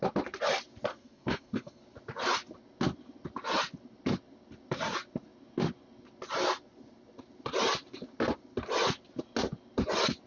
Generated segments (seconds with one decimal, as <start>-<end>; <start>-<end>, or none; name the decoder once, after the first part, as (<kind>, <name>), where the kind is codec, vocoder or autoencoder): 0.9-1.8 (codec, SNAC)